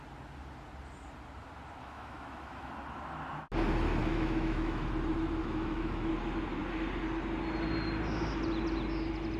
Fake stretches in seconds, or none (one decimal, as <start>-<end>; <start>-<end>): 1.8-2.7; 4.0-4.9; 5.4-6.1